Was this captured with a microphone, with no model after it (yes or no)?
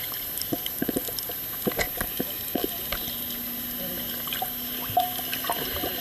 yes